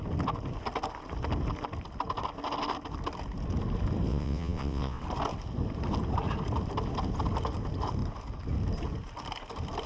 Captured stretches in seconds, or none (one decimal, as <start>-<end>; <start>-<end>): 0.0-4.1; 5.0-9.9